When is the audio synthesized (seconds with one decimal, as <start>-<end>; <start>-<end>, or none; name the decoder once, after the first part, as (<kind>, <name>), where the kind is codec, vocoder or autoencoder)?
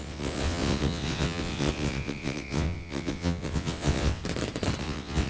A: 0.0-4.2 (vocoder, WaveNeXt); 4.8-5.3